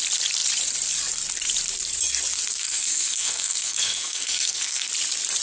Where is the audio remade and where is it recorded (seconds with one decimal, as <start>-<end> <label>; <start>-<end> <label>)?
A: 0.0-2.5 recorded; 2.5-4.9 remade; 4.9-5.4 recorded